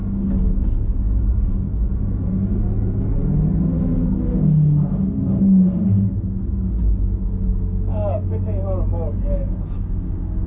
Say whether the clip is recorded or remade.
recorded